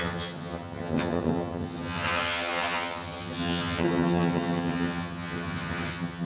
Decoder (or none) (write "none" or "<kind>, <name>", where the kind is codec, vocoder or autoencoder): vocoder, HiFi-GAN